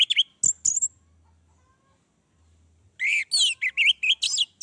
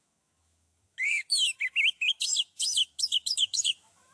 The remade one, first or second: second